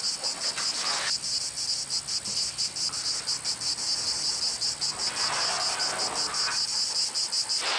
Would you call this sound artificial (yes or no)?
no